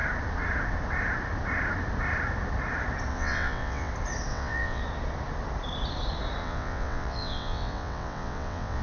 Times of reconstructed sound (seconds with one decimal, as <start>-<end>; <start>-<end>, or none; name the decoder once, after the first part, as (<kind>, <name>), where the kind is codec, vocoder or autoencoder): 3.1-3.9 (vocoder, WaveNeXt); 4.3-4.8; 6.4-8.8